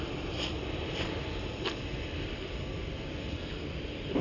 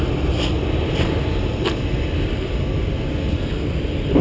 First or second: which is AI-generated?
first